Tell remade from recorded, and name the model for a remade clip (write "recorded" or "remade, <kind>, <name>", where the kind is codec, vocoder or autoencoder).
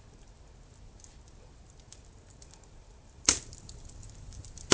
recorded